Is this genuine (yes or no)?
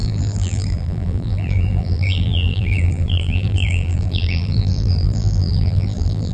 no